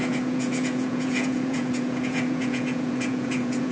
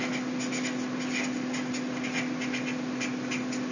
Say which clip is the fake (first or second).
first